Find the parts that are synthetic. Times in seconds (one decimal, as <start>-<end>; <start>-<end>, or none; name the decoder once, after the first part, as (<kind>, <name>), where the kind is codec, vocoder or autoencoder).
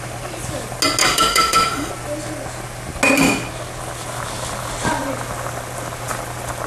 1.0-1.9 (autoencoder, DAC-VAE)